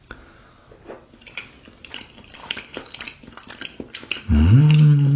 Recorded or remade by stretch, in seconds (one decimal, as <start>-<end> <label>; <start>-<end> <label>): 0.0-2.4 recorded; 2.4-3.0 remade; 3.0-5.2 recorded